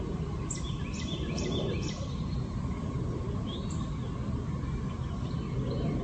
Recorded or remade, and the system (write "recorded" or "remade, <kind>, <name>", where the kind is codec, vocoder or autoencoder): recorded